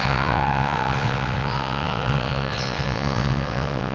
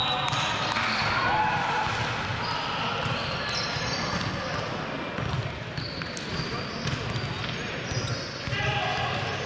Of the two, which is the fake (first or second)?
first